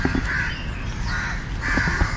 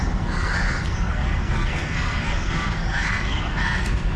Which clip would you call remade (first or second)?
second